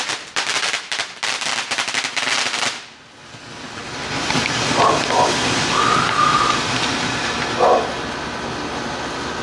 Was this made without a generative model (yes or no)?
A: yes